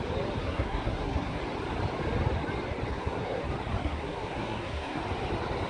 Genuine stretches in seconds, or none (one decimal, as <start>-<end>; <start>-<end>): 0.0-0.4; 1.4-2.9; 3.4-3.8; 5.0-5.7